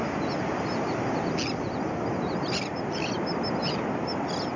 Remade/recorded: recorded